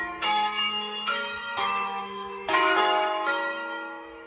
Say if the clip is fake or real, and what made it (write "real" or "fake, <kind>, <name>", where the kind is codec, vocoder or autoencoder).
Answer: fake, autoencoder, DAC-VAE